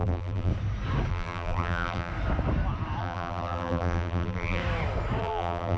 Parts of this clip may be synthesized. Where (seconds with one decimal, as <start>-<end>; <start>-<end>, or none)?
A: 0.0-0.5; 1.1-2.1; 3.0-4.6; 5.2-5.8